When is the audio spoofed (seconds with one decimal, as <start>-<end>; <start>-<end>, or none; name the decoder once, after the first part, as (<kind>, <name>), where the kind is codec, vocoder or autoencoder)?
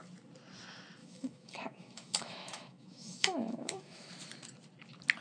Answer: 1.0-4.1 (autoencoder, DAC-VAE)